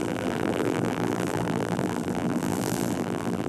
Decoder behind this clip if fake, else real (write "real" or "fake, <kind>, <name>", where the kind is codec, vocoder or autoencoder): fake, vocoder, BigVGAN v2